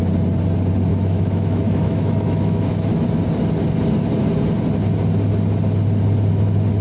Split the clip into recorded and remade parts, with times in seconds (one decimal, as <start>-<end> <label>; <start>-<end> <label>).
0.0-0.9 recorded; 0.9-3.2 remade; 3.2-6.8 recorded